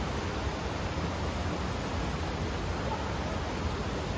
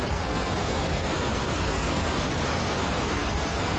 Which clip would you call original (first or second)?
first